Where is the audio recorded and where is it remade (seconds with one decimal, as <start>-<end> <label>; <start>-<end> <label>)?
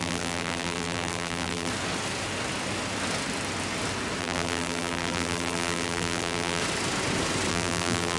0.0-1.7 remade; 1.7-4.2 recorded; 4.2-6.6 remade; 6.6-7.5 recorded; 7.5-8.2 remade